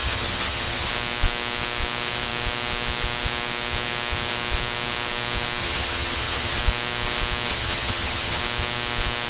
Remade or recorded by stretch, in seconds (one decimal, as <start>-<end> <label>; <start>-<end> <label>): 0.0-0.9 remade; 0.9-5.6 recorded; 5.6-6.6 remade; 6.6-7.5 recorded; 7.5-8.4 remade; 8.4-9.3 recorded